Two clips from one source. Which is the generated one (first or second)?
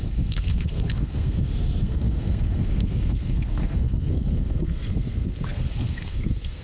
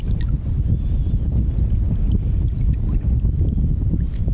first